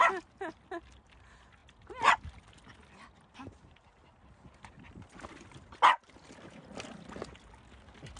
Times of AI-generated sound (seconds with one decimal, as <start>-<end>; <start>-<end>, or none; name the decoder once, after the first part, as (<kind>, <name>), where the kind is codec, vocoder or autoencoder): none